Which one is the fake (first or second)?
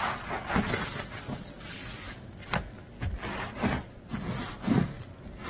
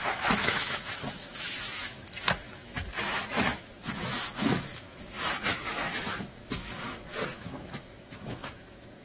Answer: second